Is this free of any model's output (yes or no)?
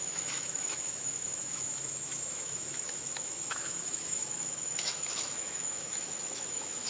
no